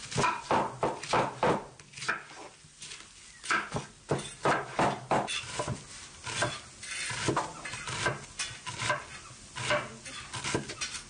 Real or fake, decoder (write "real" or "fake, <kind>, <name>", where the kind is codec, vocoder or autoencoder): real